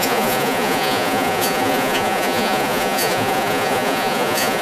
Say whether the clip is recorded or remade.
remade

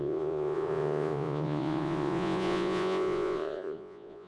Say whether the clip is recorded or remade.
remade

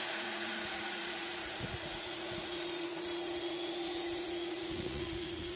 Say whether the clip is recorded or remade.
remade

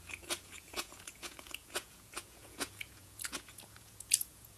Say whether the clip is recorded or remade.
remade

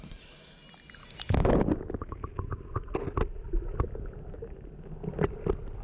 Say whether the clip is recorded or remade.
recorded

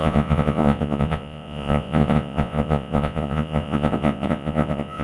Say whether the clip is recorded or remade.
remade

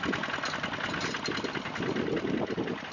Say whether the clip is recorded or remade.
recorded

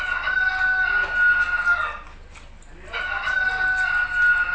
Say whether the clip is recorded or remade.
recorded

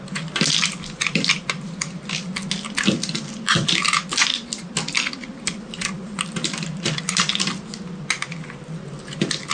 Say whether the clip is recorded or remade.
recorded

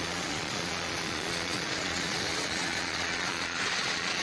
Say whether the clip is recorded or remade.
remade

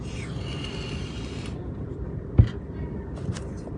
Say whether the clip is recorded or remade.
recorded